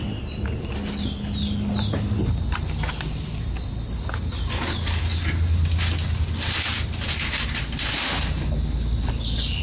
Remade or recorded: recorded